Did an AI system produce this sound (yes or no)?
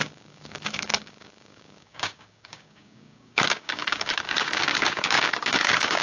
yes